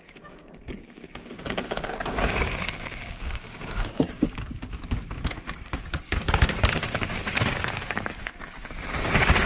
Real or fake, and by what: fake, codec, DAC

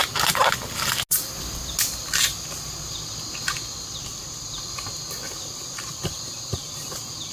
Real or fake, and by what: real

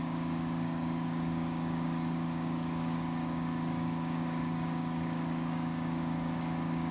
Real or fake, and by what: fake, codec, DAC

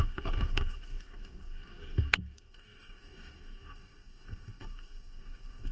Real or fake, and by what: fake, codec, DAC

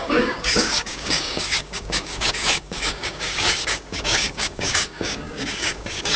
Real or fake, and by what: fake, codec, DAC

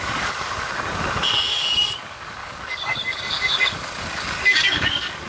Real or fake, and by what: fake, codec, DAC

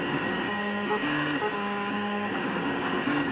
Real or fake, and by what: fake, codec, DAC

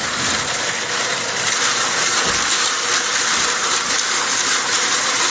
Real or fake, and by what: real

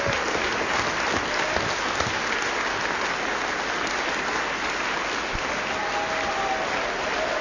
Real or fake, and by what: real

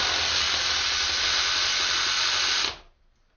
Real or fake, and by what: real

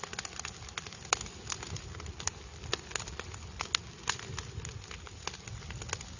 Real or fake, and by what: real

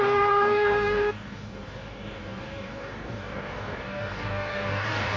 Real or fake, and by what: fake, codec, DAC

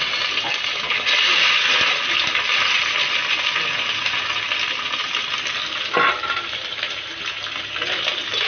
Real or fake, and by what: real